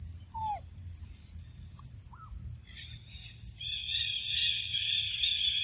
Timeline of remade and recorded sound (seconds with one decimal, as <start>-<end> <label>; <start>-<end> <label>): 0.0-0.4 recorded; 0.4-2.1 remade; 2.1-3.8 recorded; 3.8-5.1 remade; 5.1-5.6 recorded